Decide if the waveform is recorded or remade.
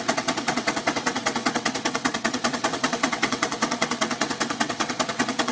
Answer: remade